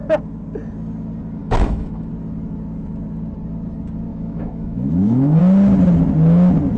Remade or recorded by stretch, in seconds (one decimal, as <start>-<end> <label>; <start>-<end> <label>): 0.0-1.4 recorded; 1.4-2.1 remade; 2.1-4.1 recorded; 4.1-5.4 remade; 5.4-6.8 recorded